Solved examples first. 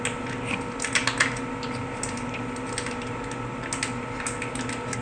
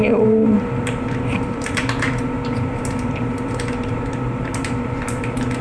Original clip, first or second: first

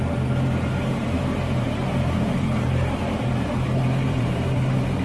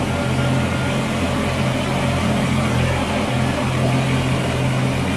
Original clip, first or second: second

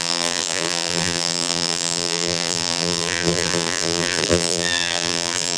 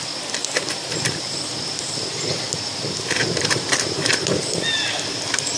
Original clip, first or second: second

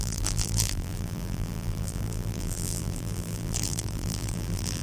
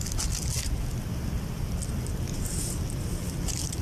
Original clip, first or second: second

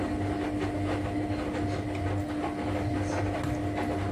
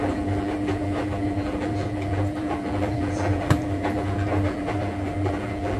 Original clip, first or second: first